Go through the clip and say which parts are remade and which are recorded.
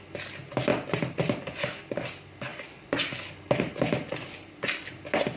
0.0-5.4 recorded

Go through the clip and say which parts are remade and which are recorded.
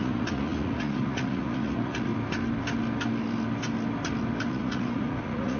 0.0-2.1 remade; 2.1-4.5 recorded; 4.5-5.6 remade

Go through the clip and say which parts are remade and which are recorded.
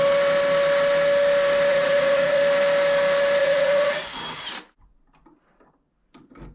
0.0-1.7 recorded; 1.7-2.4 remade; 2.4-3.4 recorded; 3.4-4.2 remade; 4.2-6.5 recorded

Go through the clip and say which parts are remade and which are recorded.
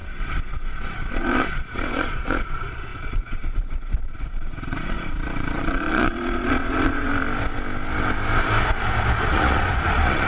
0.0-7.1 remade; 7.1-9.2 recorded; 9.2-10.3 remade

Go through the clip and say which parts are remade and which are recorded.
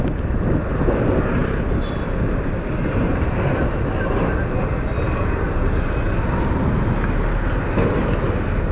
0.0-8.7 recorded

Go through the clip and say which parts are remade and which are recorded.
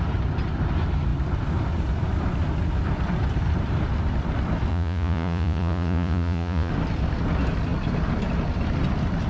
0.0-4.7 recorded; 4.7-6.7 remade; 6.7-9.3 recorded